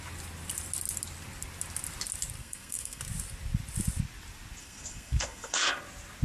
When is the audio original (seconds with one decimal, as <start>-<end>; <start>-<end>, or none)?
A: 0.0-2.4; 3.0-4.6; 5.7-6.2